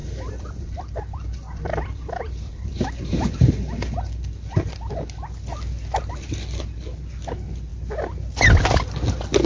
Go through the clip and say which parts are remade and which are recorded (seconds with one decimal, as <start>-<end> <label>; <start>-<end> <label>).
0.0-4.9 remade; 4.9-9.5 recorded